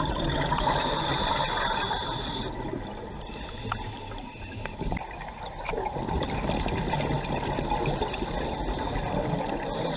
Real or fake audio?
real